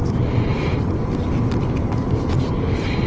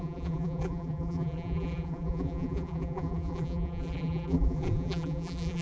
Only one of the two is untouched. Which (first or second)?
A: first